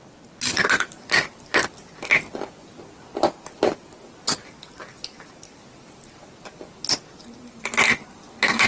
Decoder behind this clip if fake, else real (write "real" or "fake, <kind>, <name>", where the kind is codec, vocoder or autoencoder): real